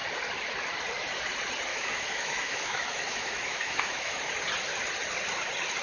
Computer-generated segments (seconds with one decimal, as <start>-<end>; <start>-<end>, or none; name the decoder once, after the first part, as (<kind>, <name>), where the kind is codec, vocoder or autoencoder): 1.7-4.2 (autoencoder, DAC-VAE)